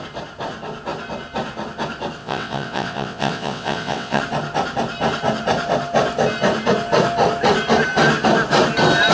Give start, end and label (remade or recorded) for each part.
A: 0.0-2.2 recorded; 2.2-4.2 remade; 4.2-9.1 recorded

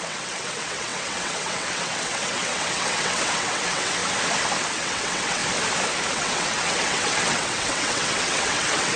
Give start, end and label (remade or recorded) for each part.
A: 0.0-4.0 remade; 4.0-4.7 recorded; 4.7-5.4 remade; 5.4-6.1 recorded; 6.1-9.0 remade

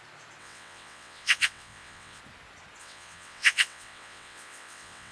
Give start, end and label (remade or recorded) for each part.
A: 0.0-0.4 recorded; 0.4-2.2 remade; 2.2-2.8 recorded; 2.8-5.1 remade

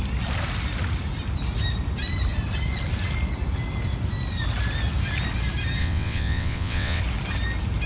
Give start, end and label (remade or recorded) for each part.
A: 0.0-5.8 recorded; 5.8-7.0 remade; 7.0-7.9 recorded